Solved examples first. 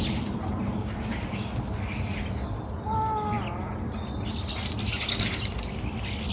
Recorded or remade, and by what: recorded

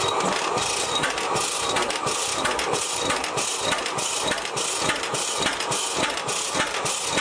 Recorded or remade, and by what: recorded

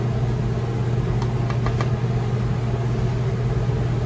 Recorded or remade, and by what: recorded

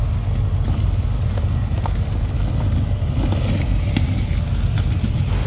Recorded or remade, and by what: recorded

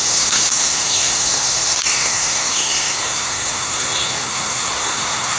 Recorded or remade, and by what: remade, codec, SNAC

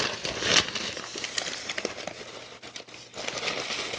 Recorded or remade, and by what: recorded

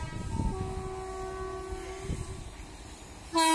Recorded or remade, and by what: recorded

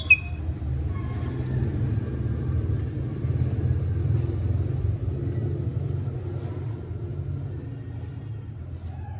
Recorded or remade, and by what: recorded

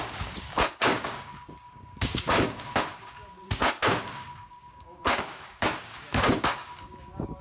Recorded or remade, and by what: remade, codec, DAC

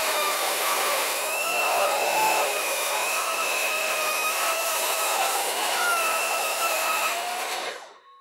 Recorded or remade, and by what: remade, autoencoder, DAC-VAE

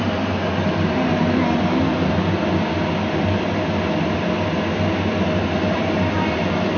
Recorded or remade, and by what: recorded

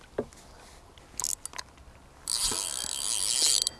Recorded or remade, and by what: recorded